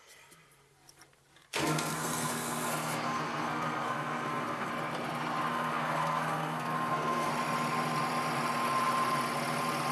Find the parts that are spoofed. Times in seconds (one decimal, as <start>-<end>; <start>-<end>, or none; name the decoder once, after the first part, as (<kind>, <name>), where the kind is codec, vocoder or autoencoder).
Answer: 1.5-4.7 (codec, SNAC); 5.5-7.3